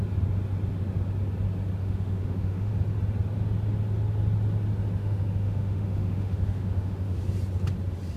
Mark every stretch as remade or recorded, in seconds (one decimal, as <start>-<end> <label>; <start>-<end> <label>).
0.0-1.8 recorded; 1.8-2.7 remade; 2.7-5.0 recorded; 5.0-7.2 remade; 7.2-8.2 recorded